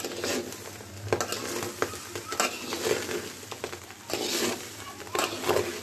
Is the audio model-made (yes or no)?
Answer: no